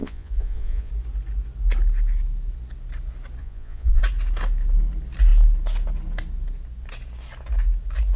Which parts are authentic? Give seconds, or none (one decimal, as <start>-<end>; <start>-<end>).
0.9-3.4; 4.0-8.2